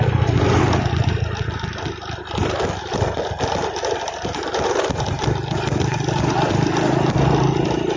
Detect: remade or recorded recorded